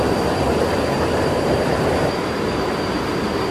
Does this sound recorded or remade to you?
remade